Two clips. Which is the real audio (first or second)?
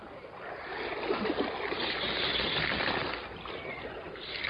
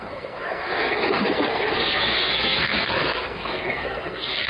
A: first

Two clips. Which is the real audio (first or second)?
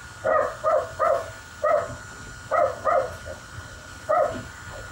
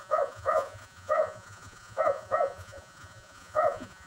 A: first